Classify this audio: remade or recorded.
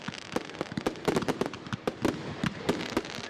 recorded